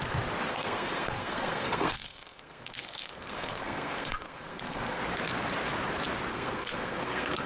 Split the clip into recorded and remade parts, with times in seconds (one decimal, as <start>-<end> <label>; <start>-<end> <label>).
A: 0.0-0.5 recorded; 0.5-5.0 remade; 5.0-6.3 recorded; 6.3-7.5 remade